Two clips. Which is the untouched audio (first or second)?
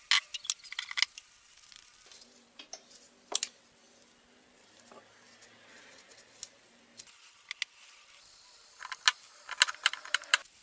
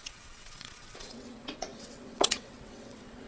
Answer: first